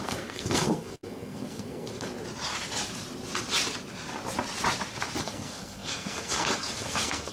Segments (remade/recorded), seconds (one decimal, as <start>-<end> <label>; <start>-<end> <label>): 0.0-2.1 remade; 2.1-5.2 recorded; 5.2-7.3 remade